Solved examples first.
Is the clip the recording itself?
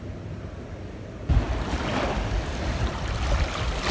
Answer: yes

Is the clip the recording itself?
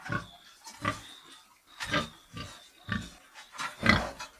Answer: yes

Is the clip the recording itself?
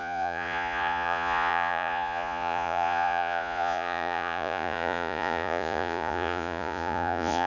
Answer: no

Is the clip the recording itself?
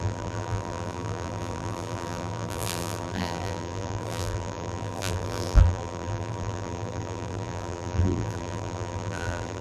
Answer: no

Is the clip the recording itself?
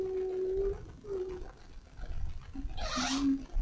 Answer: yes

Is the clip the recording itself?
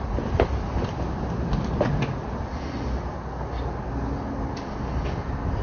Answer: yes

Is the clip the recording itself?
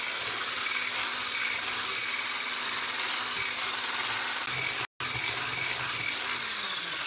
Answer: yes